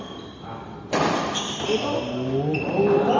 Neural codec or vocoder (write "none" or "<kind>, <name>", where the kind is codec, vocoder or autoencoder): none